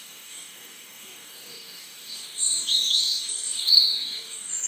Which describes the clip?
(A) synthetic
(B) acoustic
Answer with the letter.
A